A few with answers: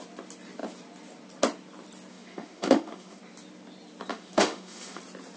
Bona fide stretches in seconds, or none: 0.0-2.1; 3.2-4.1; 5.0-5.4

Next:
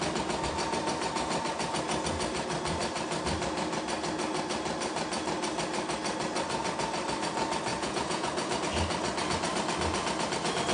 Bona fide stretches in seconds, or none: 0.0-7.7; 8.6-10.7

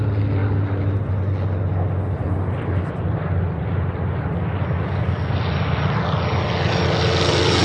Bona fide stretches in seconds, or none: 0.0-7.6

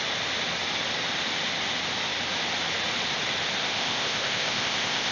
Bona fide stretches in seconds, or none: 0.0-3.6